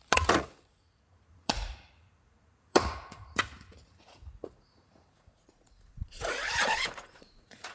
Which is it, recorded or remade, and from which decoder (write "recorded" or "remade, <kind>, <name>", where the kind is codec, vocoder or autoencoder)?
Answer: remade, vocoder, Vocos